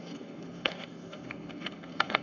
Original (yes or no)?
no